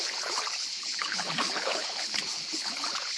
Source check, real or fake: fake